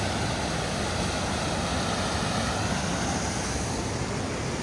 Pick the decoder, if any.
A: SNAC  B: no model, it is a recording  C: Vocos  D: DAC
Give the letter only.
B